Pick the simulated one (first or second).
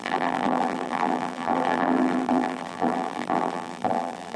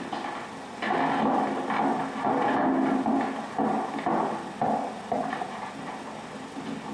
first